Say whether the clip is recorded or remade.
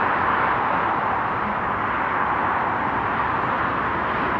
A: recorded